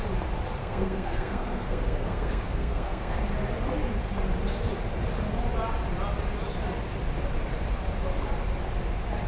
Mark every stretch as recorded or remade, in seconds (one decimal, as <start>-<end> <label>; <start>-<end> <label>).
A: 0.0-0.6 recorded; 0.6-3.1 remade; 3.1-9.3 recorded